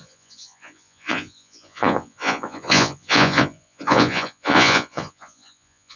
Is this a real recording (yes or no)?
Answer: no